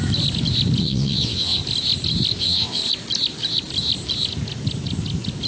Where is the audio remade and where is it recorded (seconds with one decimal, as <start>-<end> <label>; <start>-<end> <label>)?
0.0-0.8 recorded; 0.8-1.6 remade; 1.6-2.4 recorded; 2.4-2.8 remade; 2.8-5.5 recorded